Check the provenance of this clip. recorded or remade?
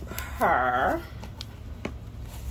recorded